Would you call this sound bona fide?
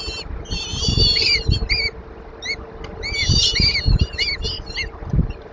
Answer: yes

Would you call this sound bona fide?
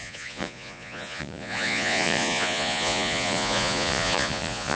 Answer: no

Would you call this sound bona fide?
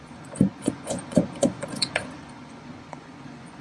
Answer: no